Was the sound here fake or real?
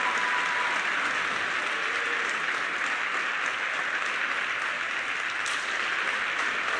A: real